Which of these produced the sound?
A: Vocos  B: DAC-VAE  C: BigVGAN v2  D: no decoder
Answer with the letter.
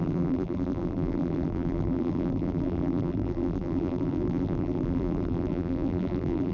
C